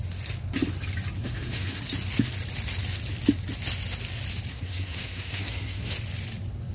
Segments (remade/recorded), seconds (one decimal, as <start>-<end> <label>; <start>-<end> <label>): 0.0-1.2 recorded; 1.2-1.8 remade; 1.8-4.5 recorded; 4.5-5.9 remade; 5.9-6.7 recorded

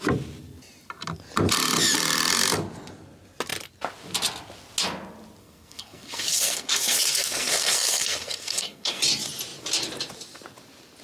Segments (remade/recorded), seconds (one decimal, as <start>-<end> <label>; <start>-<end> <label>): 0.0-5.4 recorded; 5.4-9.0 remade; 9.0-11.0 recorded

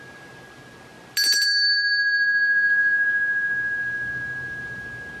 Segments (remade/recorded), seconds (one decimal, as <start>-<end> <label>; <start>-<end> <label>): 0.0-5.2 recorded

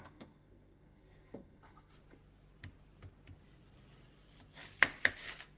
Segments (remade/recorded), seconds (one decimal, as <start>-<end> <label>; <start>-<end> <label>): 0.0-1.9 remade; 1.9-5.6 recorded

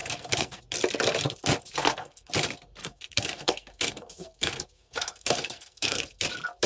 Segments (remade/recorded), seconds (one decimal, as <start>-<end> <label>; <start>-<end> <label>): 0.0-0.6 remade; 0.6-1.8 recorded; 1.8-2.3 remade; 2.3-2.8 recorded; 2.8-6.2 remade; 6.2-6.7 recorded

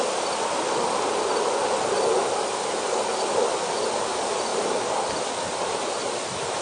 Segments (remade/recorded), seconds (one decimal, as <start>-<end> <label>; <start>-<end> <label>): 0.0-6.6 recorded

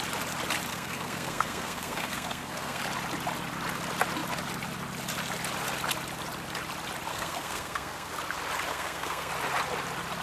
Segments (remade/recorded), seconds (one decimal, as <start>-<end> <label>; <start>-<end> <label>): 0.0-0.7 recorded; 0.7-2.8 remade; 2.8-7.1 recorded; 7.1-8.1 remade; 8.1-8.7 recorded; 8.7-9.3 remade; 9.3-10.2 recorded

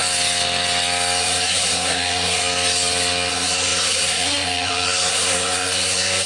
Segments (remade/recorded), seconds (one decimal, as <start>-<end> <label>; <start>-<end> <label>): 0.0-1.2 recorded; 1.2-2.4 remade; 2.4-3.3 recorded; 3.3-6.3 remade